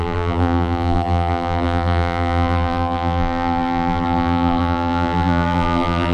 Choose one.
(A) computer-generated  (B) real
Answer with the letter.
A